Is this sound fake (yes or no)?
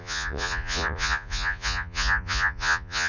yes